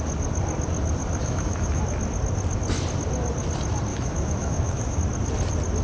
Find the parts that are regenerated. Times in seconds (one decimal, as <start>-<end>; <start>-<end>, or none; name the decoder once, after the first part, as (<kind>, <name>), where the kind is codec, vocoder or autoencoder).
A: 1.2-1.8 (autoencoder, DAC-VAE); 3.9-5.0